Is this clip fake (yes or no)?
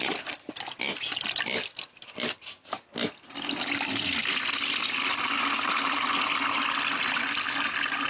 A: no